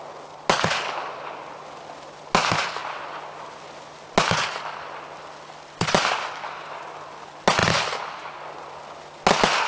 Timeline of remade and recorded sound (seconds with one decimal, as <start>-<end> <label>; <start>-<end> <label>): 0.0-9.7 recorded